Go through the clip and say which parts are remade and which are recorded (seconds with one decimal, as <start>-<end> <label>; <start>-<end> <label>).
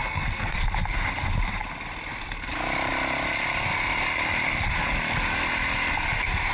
0.0-0.6 remade; 0.6-6.5 recorded